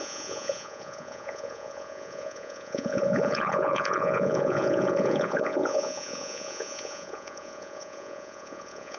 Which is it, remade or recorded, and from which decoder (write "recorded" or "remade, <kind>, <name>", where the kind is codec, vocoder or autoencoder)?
remade, vocoder, Vocos